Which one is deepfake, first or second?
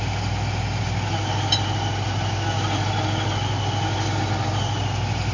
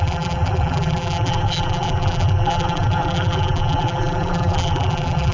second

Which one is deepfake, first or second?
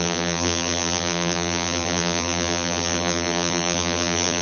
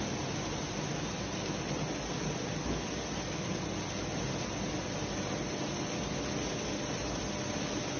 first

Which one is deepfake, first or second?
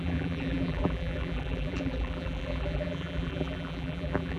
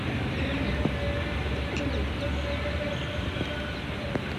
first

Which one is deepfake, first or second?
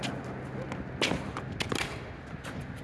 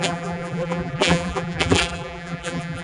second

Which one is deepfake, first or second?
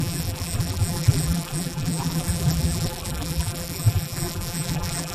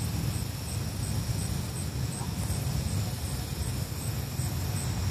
first